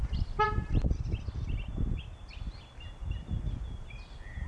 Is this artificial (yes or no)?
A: no